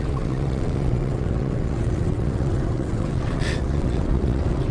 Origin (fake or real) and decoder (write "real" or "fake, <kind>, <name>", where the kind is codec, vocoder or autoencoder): fake, vocoder, WaveNeXt